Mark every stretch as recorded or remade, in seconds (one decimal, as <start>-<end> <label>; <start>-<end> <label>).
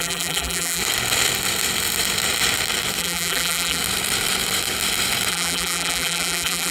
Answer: 0.0-0.8 remade; 0.8-3.0 recorded; 3.0-3.8 remade; 3.8-5.3 recorded; 5.3-6.7 remade